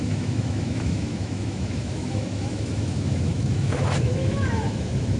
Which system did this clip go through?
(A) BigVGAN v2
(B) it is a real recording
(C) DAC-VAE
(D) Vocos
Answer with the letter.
C